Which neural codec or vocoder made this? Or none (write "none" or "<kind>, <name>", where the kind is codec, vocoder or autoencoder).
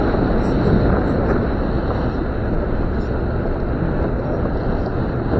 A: none